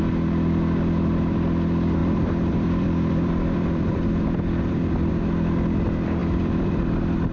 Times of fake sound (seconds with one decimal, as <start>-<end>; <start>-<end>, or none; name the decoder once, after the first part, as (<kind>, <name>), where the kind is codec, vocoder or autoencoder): 2.0-5.1 (vocoder, BigVGAN v2); 6.2-6.8